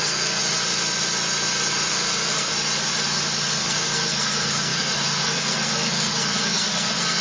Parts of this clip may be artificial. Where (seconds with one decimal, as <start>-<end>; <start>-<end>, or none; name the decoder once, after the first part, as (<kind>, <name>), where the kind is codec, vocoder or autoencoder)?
0.0-0.4 (codec, SNAC); 1.9-2.5; 3.6-7.2